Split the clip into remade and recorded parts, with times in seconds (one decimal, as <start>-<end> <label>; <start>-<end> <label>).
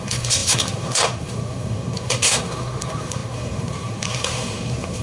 0.0-5.0 remade